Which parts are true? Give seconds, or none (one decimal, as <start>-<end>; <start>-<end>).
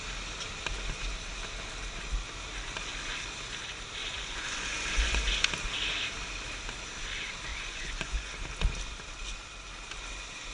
0.0-4.0; 5.2-7.5; 8.3-10.5